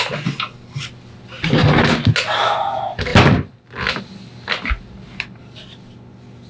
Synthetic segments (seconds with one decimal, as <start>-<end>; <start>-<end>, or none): none